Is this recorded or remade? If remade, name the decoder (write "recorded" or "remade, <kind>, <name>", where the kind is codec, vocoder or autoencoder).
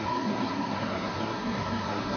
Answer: remade, codec, SNAC